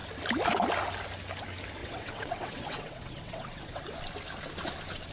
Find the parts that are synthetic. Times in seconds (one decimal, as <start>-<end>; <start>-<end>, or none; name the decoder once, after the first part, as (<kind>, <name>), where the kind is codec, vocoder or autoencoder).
1.8-3.8 (vocoder, WaveNeXt)

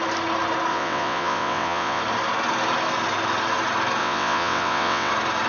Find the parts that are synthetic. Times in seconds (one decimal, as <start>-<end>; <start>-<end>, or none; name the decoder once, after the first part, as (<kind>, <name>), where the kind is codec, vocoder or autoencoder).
0.7-2.0 (vocoder, WaveNeXt); 4.0-5.1

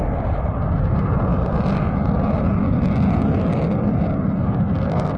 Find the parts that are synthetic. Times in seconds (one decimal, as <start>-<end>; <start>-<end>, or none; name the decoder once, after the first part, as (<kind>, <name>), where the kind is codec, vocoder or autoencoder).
none

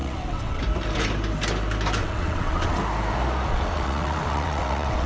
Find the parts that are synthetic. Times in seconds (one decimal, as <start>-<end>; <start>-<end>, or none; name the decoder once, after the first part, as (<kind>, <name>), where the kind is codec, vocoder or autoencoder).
0.0-0.6 (vocoder, WaveNeXt); 2.0-2.8; 3.5-5.1

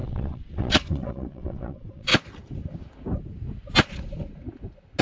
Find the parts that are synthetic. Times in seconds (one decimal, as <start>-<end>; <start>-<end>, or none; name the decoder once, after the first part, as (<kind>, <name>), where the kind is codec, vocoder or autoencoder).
0.0-2.1 (vocoder, WaveNeXt)